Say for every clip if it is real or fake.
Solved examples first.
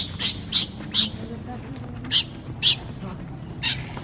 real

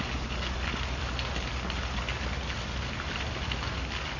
real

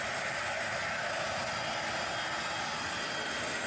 real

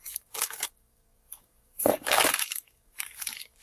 fake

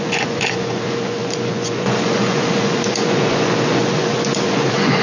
fake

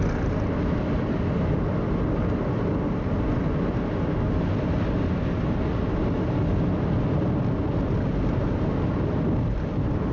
real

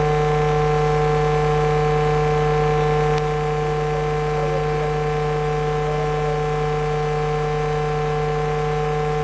real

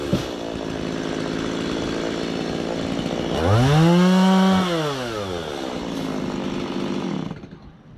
real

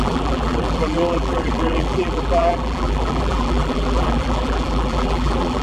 fake